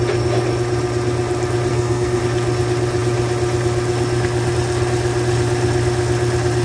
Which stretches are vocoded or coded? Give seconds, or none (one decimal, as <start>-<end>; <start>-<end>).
1.7-2.2